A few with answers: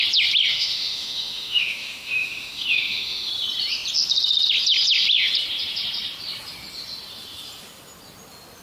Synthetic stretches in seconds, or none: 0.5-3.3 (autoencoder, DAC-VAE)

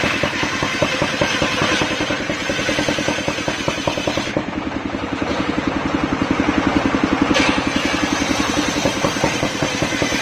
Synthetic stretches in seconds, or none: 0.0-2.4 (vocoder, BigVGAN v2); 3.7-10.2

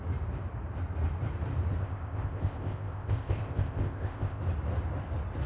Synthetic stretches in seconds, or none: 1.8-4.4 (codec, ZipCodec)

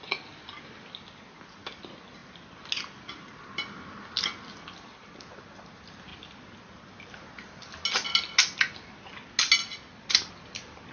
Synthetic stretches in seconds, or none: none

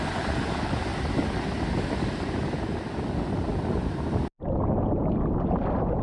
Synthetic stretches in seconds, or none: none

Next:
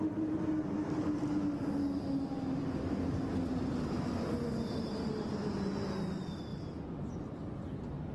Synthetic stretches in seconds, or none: none

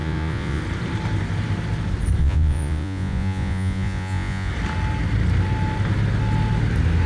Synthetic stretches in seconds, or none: 0.0-0.6 (vocoder, Vocos); 2.2-4.5